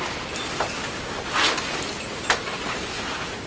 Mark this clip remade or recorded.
recorded